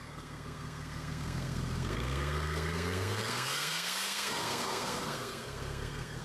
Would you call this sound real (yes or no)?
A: no